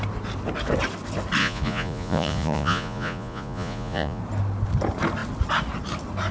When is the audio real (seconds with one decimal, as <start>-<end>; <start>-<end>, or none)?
0.0-1.4; 4.2-6.3